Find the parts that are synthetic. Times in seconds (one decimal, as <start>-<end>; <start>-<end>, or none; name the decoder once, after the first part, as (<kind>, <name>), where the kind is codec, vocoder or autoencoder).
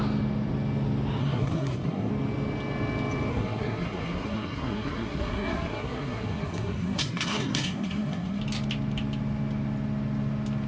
1.2-2.1 (codec, SNAC); 3.3-8.4